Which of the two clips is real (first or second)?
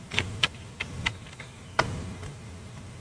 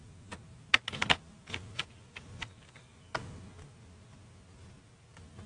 second